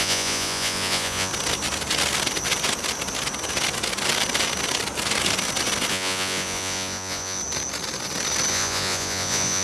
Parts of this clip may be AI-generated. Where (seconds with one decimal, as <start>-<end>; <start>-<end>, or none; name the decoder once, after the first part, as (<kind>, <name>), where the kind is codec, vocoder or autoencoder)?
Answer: 0.0-1.3 (vocoder, Vocos); 5.9-7.4; 8.5-9.6